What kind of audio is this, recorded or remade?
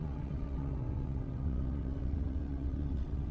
remade